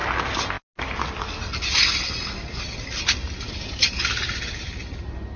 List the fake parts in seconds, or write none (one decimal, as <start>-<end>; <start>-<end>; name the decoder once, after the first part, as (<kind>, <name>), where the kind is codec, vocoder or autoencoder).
none